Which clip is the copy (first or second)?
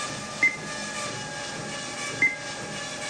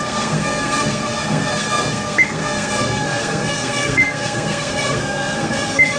second